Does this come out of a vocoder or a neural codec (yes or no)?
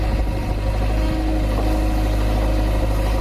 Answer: no